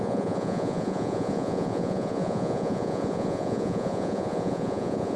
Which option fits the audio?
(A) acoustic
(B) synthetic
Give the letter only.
B